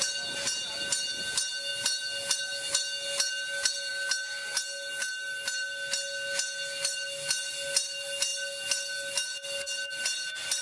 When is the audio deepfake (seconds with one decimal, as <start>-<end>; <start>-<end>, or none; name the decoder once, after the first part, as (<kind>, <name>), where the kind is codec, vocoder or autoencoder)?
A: none

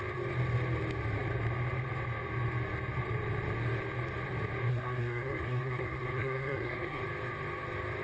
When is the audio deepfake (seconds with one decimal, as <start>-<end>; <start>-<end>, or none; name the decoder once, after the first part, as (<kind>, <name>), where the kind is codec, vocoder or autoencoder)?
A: 4.7-7.0 (codec, SNAC)

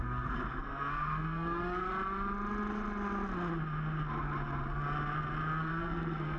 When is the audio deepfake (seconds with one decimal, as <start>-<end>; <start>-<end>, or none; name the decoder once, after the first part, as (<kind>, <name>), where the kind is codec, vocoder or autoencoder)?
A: 0.0-1.9 (codec, SNAC); 5.7-6.4